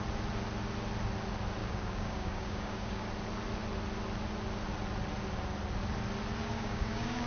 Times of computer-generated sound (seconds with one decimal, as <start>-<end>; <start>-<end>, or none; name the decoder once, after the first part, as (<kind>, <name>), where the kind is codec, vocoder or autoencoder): 1.6-3.1 (codec, DAC); 6.4-7.3